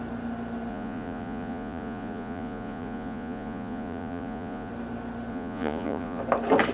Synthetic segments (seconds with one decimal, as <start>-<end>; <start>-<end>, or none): 0.7-4.7; 5.3-6.2